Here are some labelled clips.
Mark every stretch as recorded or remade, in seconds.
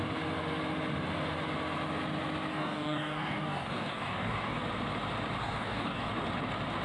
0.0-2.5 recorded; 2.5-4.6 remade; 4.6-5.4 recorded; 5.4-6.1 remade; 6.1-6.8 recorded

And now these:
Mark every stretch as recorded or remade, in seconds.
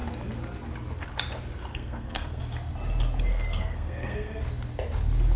0.0-1.7 recorded; 1.7-2.4 remade; 2.4-3.3 recorded; 3.3-4.4 remade; 4.4-5.4 recorded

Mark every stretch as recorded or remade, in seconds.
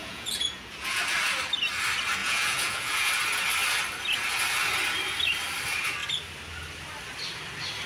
0.0-1.0 remade; 1.0-2.2 recorded; 2.2-3.1 remade; 3.1-7.9 recorded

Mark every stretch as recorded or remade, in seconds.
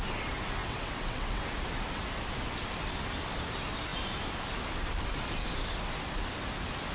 0.0-0.6 recorded; 0.6-1.4 remade; 1.4-6.9 recorded